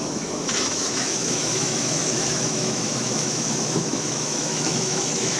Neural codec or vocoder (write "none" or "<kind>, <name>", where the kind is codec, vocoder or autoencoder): autoencoder, DAC-VAE